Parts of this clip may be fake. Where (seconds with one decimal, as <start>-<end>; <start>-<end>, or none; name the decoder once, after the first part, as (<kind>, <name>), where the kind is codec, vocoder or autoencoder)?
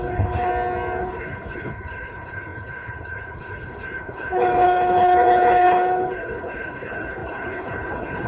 0.0-0.5 (codec, HILCodec); 1.0-8.3